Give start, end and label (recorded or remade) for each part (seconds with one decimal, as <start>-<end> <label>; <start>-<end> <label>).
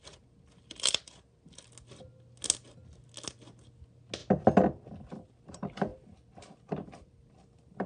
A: 0.0-5.9 recorded; 5.9-7.3 remade; 7.3-7.9 recorded